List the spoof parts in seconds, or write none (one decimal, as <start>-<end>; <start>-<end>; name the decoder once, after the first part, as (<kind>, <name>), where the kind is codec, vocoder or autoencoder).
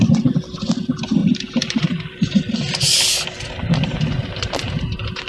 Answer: 1.2-2.4 (vocoder, BigVGAN v2); 3.6-4.8